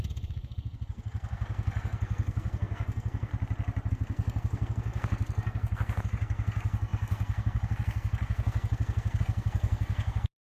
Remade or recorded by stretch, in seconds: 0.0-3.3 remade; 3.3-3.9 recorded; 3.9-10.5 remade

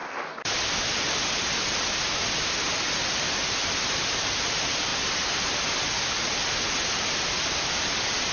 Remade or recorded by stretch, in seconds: 0.0-8.3 recorded

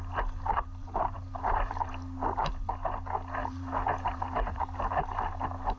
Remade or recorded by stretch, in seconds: 0.0-0.8 recorded; 0.8-1.9 remade; 1.9-3.4 recorded; 3.4-4.6 remade; 4.6-5.8 recorded

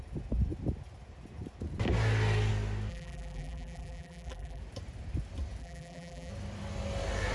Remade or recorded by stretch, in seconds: 0.0-2.9 recorded; 2.9-4.6 remade; 4.6-5.6 recorded; 5.6-6.3 remade; 6.3-7.3 recorded